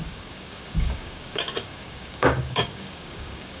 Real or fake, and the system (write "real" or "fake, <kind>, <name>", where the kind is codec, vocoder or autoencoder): fake, codec, DAC